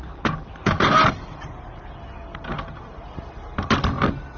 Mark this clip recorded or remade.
recorded